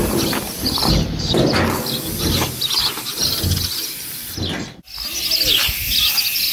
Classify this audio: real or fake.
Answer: real